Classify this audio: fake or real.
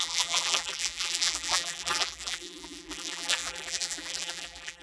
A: fake